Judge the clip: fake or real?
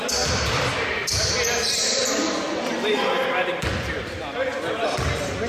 fake